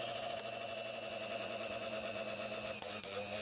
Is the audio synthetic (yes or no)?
yes